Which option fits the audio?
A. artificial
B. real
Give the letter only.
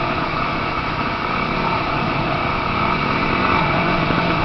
A